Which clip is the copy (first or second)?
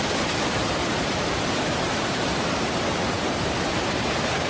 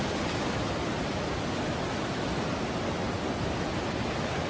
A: first